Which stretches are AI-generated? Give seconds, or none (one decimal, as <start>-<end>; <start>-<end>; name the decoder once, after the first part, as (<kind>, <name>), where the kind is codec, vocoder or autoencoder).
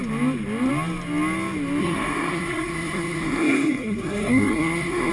1.8-5.1 (codec, SNAC)